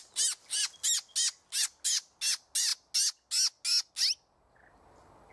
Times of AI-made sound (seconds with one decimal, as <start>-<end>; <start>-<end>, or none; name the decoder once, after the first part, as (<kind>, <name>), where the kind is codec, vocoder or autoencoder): none